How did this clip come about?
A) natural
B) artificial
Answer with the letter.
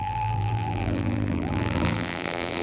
B